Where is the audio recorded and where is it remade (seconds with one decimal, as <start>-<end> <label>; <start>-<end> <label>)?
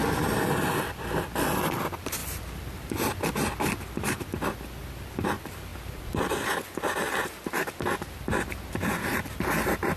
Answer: 0.0-1.0 recorded; 1.0-2.2 remade; 2.2-3.6 recorded; 3.6-5.7 remade; 5.7-9.0 recorded; 9.0-10.0 remade